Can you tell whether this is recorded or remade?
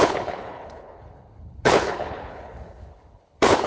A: remade